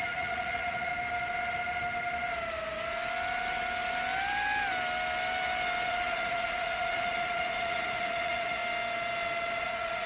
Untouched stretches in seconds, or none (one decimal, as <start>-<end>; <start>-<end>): 0.9-5.9; 8.6-9.6